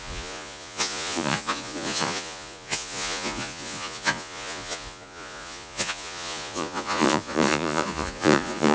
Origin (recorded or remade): remade